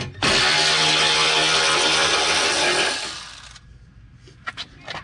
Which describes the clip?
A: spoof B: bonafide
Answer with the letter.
B